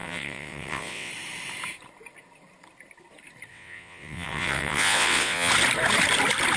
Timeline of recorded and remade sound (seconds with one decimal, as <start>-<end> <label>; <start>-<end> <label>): 0.0-1.1 remade; 1.1-3.5 recorded; 3.5-5.5 remade; 5.5-6.6 recorded